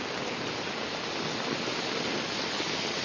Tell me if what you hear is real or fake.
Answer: real